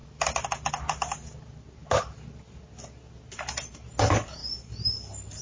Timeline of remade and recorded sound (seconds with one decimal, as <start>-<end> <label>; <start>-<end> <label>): 0.0-5.4 recorded